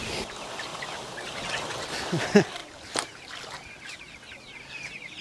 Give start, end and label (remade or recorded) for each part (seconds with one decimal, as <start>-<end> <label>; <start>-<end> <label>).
0.0-5.2 recorded